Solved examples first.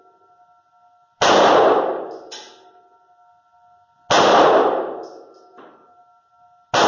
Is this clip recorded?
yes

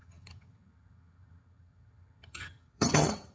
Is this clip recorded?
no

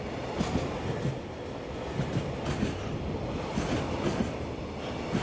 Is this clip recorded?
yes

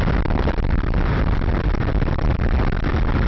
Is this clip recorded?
yes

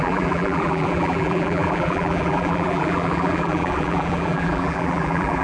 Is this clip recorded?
no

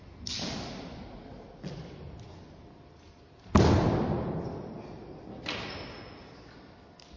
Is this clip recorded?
yes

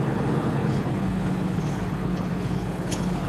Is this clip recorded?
no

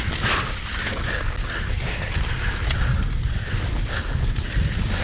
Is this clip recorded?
yes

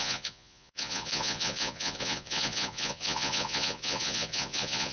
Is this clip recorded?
no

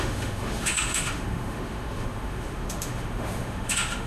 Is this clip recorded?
no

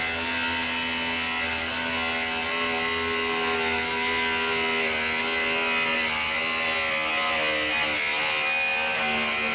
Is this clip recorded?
yes